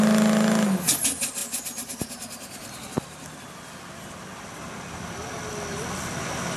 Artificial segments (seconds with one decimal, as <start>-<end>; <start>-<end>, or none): none